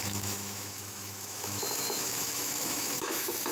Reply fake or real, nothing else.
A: fake